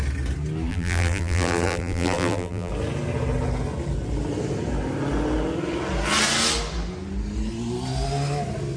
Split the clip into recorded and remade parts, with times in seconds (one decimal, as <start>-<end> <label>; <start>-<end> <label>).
0.0-0.7 recorded; 0.7-2.7 remade; 2.7-8.8 recorded